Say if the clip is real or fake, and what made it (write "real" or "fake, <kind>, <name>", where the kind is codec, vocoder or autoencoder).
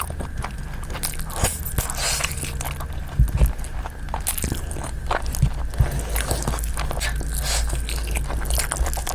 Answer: real